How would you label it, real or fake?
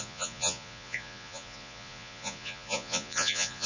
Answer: fake